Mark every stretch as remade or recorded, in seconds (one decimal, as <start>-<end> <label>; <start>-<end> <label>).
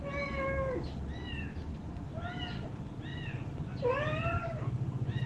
0.0-1.7 recorded; 1.7-2.3 remade; 2.3-3.1 recorded; 3.1-3.8 remade; 3.8-4.3 recorded; 4.3-5.3 remade